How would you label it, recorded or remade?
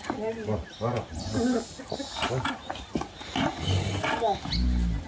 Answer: recorded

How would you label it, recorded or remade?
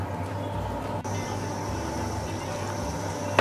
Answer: recorded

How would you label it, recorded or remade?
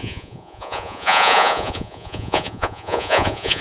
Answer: remade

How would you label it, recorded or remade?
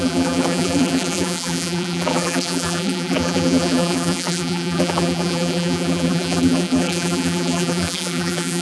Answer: remade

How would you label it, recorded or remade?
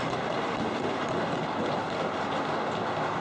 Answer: recorded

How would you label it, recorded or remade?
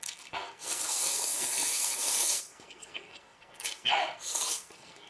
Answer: remade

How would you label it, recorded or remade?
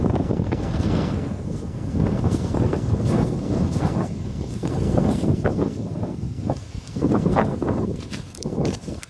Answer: remade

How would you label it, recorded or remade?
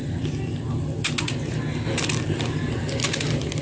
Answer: recorded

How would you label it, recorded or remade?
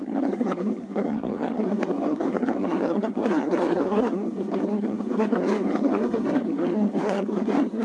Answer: remade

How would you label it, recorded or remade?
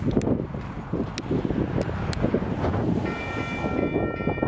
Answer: recorded